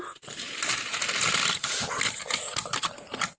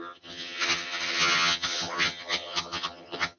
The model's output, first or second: second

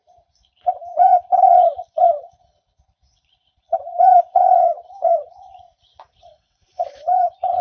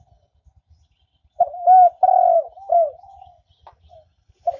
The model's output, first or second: first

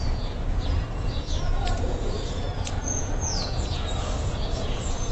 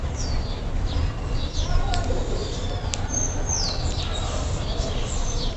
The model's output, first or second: first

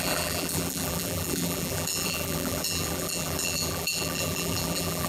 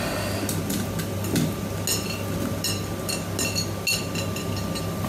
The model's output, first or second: first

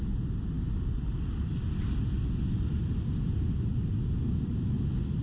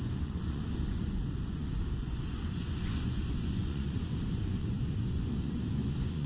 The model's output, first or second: second